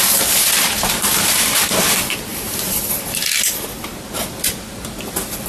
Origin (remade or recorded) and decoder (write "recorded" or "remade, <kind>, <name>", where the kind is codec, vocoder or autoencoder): recorded